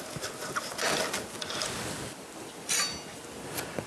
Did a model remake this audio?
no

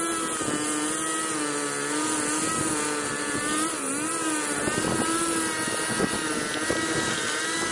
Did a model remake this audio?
no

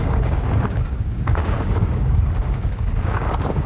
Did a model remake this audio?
yes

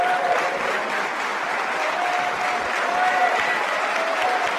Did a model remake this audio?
no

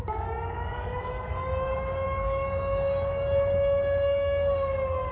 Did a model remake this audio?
yes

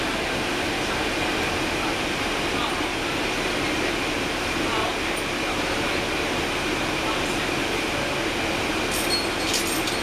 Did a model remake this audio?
no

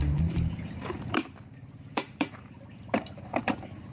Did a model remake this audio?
yes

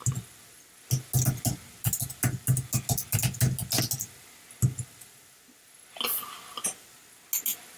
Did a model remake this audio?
no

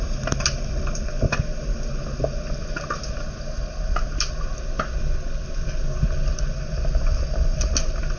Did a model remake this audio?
no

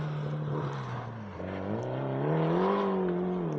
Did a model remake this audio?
no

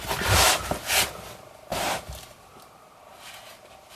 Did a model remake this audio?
no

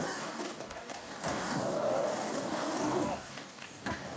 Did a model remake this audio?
yes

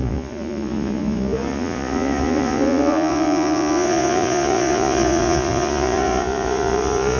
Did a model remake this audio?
yes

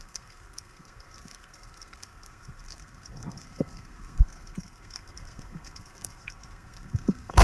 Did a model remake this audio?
yes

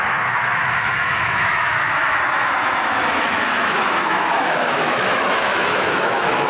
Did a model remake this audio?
yes